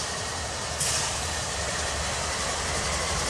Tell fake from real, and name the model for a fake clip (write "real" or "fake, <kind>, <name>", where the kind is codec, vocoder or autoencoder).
fake, vocoder, BigVGAN v2